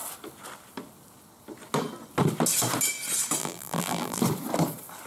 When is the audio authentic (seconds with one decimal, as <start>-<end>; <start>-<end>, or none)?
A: 0.0-3.4; 4.2-5.1